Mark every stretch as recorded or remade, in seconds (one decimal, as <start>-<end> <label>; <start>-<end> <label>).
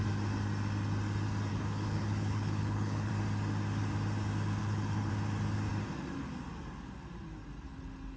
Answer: 0.0-1.5 recorded; 1.5-3.1 remade; 3.1-4.6 recorded; 4.6-5.1 remade; 5.1-8.2 recorded